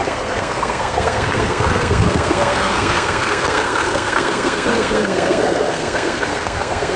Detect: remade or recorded remade